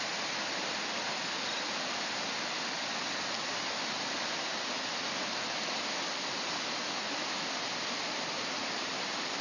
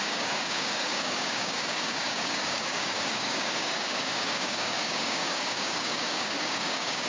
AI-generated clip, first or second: second